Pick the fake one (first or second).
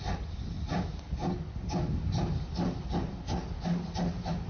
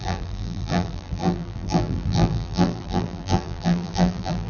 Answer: second